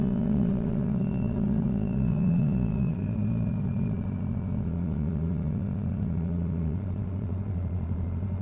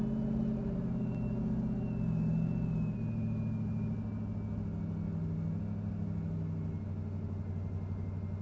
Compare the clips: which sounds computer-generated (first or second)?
first